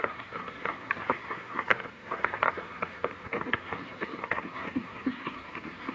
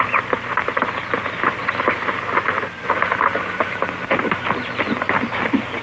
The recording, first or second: second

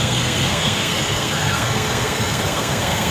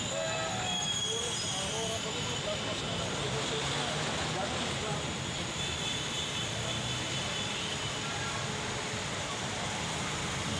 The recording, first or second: second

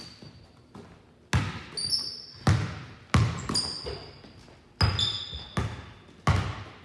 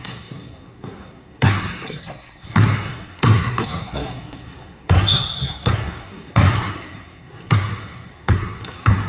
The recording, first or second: first